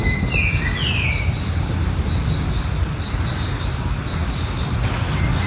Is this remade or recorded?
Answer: recorded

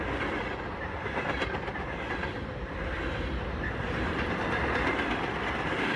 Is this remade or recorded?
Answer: recorded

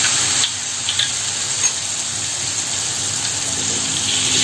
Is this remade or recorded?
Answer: recorded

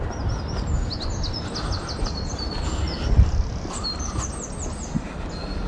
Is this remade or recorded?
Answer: recorded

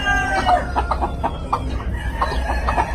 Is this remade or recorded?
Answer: recorded